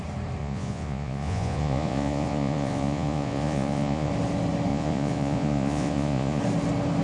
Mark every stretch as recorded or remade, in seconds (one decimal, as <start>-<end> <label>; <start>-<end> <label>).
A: 0.0-0.4 recorded; 0.4-4.1 remade; 4.1-4.7 recorded; 4.7-6.4 remade; 6.4-7.0 recorded